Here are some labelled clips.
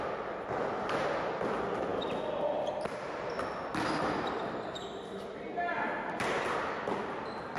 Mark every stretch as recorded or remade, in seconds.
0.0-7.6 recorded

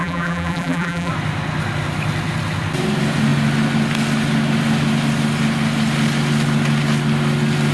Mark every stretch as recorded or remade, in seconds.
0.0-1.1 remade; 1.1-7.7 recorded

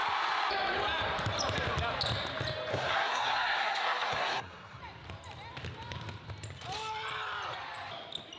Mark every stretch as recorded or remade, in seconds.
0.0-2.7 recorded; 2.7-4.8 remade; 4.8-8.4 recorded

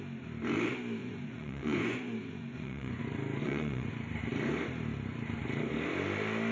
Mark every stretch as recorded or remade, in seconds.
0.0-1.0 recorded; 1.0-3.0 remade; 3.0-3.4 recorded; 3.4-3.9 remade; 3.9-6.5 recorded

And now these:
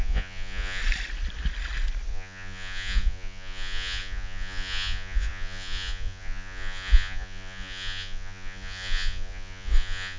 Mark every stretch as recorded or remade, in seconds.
0.0-0.8 remade; 0.8-2.1 recorded; 2.1-10.2 remade

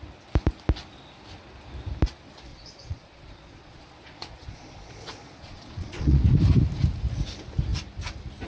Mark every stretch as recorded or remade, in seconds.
0.0-2.5 recorded; 2.5-6.2 remade; 6.2-8.5 recorded